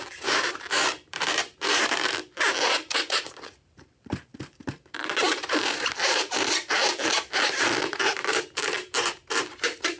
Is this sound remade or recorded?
remade